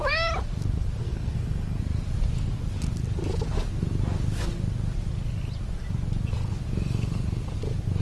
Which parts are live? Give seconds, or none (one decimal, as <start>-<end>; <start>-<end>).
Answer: 0.0-1.0; 1.8-8.0